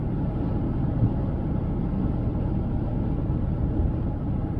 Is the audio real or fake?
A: fake